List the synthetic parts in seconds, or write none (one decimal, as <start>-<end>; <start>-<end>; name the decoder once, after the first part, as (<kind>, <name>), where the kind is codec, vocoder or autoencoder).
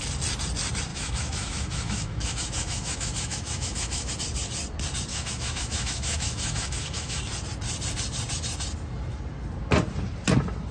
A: 0.9-4.1 (autoencoder, DAC-VAE); 5.1-7.2